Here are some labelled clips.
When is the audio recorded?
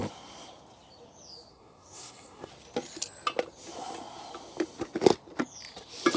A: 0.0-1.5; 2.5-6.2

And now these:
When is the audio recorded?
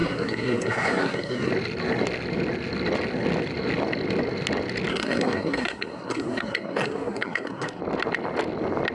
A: 1.5-4.9; 7.8-8.9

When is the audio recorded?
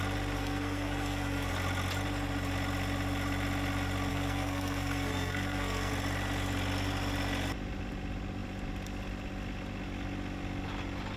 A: 0.0-0.4; 1.5-4.1; 5.9-11.2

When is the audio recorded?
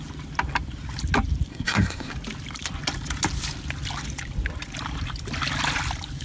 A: 0.0-1.5; 2.1-6.2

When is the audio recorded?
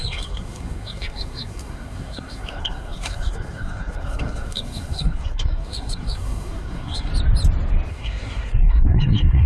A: 7.1-7.9